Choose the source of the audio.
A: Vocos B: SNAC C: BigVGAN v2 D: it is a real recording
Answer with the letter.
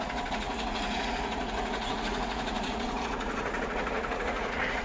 A